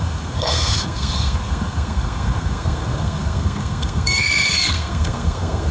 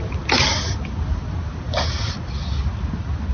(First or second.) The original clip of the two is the second